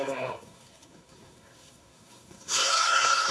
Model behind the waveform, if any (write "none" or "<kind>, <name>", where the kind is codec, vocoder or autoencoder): codec, SNAC